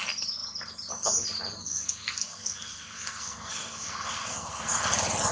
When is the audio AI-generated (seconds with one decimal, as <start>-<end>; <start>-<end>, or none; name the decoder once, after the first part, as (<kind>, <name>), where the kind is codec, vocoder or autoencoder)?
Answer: 1.6-4.8 (codec, SNAC)